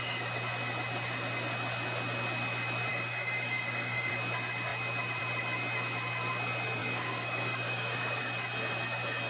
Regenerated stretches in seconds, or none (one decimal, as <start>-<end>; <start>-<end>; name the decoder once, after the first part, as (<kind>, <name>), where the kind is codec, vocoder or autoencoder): 2.9-4.1 (codec, DAC); 6.8-8.2